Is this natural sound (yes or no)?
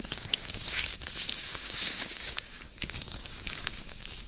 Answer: no